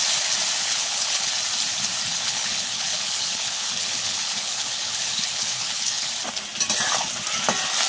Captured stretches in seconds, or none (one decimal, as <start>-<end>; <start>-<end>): 0.0-0.6; 1.3-2.1; 6.1-7.9

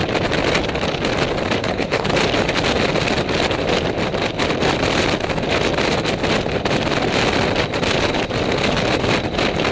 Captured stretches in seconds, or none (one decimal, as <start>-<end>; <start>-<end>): 0.0-1.6; 2.1-9.7

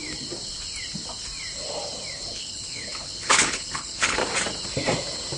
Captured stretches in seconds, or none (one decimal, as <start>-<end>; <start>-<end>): 0.0-2.3; 4.2-5.4

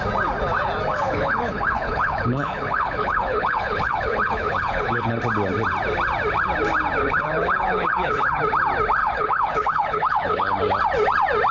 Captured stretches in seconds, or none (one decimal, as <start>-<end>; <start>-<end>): 0.0-0.9; 5.2-7.0; 8.4-9.0; 10.6-11.5

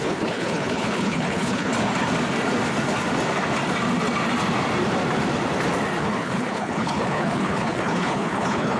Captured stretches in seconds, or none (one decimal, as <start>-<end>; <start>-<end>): 1.7-6.0

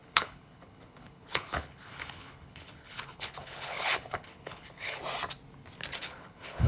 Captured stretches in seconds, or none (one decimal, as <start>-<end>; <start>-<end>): 5.0-6.0

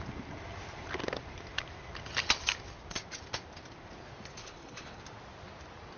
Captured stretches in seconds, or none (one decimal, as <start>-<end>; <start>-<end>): 0.0-4.4; 5.0-6.0